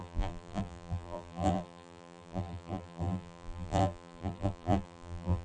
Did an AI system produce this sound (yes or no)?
yes